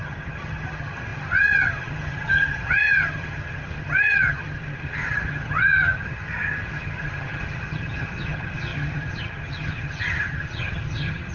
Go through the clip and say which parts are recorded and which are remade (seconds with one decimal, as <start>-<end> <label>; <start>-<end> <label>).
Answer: 0.0-11.3 remade